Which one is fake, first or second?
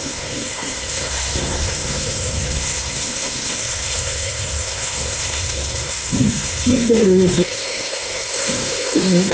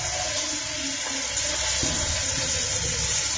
first